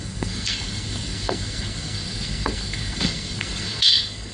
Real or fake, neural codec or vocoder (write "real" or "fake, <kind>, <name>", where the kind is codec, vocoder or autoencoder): fake, codec, SNAC